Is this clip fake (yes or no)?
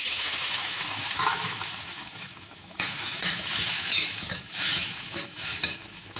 yes